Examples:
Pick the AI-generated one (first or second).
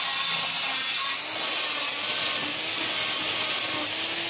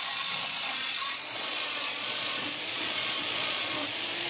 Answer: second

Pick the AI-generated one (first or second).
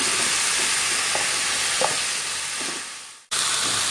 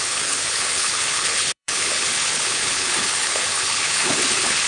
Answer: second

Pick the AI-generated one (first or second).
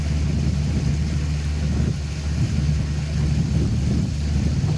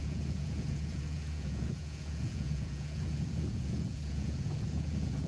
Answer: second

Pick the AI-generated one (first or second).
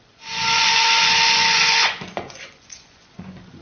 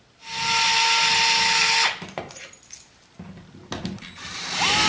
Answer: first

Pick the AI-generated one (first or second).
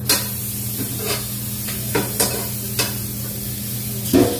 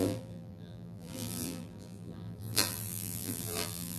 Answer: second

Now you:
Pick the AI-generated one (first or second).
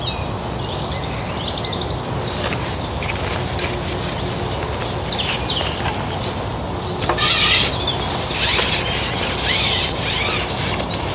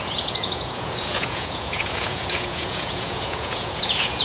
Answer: second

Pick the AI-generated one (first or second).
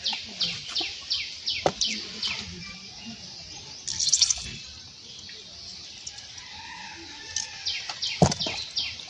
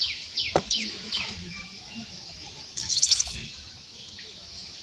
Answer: second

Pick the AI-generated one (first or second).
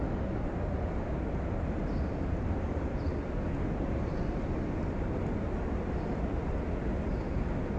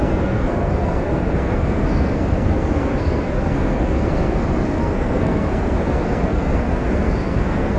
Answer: second